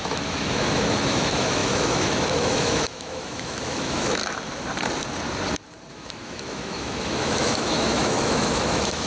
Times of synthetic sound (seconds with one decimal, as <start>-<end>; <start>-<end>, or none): 0.0-4.2; 5.9-9.1